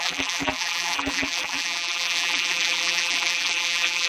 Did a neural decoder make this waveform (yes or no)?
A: yes